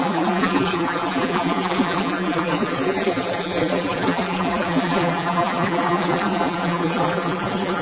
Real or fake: fake